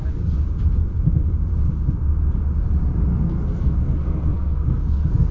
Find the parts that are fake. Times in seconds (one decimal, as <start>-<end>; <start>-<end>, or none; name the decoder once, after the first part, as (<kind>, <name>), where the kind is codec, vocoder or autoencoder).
3.1-5.3 (codec, SNAC)